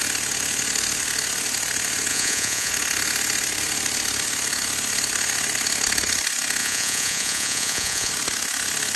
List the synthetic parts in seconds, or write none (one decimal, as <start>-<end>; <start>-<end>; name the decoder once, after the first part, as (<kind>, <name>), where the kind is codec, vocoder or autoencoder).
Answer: 2.1-2.7 (vocoder, Vocos); 6.6-8.1